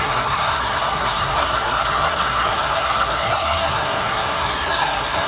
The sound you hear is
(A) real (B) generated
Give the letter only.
B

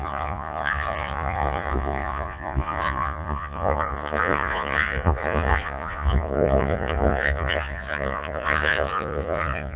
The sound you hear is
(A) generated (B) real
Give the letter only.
A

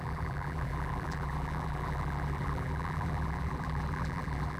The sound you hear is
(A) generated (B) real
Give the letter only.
A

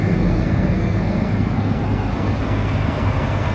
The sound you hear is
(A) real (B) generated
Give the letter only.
B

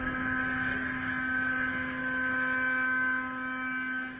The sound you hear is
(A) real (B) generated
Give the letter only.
A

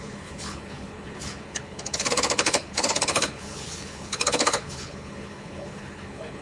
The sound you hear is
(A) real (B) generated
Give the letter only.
B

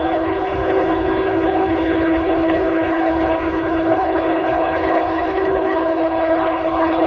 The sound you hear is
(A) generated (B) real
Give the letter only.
A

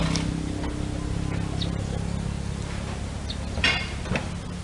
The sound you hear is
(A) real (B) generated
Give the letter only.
A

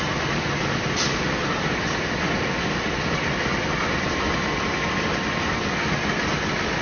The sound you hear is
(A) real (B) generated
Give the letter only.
A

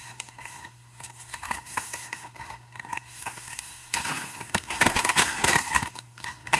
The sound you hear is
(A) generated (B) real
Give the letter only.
A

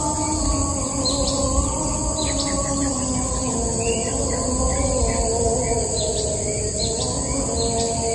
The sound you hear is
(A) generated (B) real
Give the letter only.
B